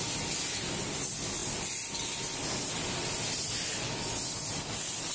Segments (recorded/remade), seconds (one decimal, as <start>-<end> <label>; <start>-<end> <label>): 0.0-5.1 recorded

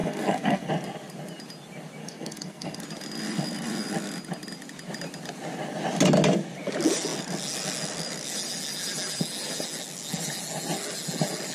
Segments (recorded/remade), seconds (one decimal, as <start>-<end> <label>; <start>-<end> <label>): 0.0-0.7 remade; 0.7-2.0 recorded; 2.0-2.8 remade; 2.8-11.5 recorded

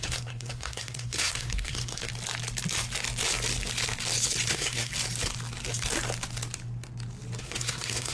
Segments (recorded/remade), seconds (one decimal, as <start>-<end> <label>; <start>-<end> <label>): 0.0-2.1 remade; 2.1-4.5 recorded; 4.5-4.9 remade; 4.9-7.4 recorded; 7.4-8.1 remade

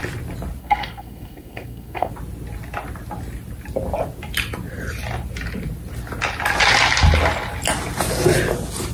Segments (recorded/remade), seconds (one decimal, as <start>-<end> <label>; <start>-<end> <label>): 0.0-0.6 recorded; 0.6-2.1 remade; 2.1-8.9 recorded

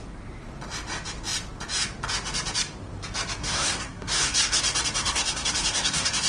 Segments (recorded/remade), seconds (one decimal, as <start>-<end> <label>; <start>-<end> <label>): 0.0-3.4 recorded; 3.4-4.6 remade; 4.6-5.0 recorded; 5.0-6.3 remade

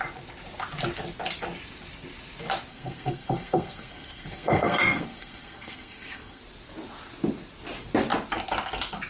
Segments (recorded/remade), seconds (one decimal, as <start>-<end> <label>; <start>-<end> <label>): 0.0-2.7 recorded; 2.7-6.4 remade; 6.4-9.1 recorded